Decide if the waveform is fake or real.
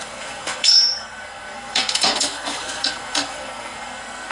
fake